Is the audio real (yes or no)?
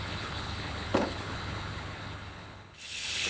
no